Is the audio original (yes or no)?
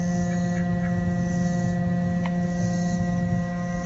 yes